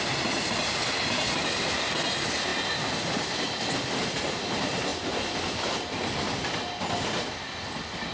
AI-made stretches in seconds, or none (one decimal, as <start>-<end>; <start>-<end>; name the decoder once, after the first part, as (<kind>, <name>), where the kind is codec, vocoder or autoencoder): none